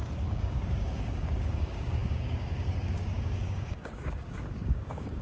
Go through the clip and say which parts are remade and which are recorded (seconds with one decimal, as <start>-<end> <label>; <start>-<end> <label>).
0.0-5.2 remade